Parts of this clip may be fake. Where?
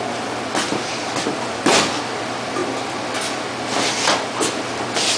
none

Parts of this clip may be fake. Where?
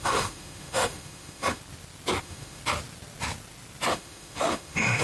0.0-1.6; 2.2-2.6; 3.9-5.0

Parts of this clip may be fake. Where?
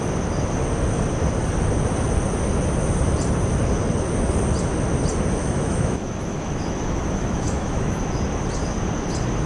5.4-8.0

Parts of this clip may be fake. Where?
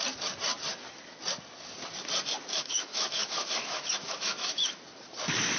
2.5-4.8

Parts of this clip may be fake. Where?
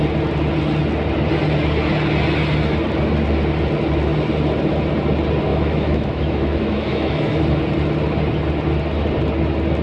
5.5-7.4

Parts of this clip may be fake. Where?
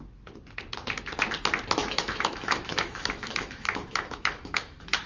1.8-5.1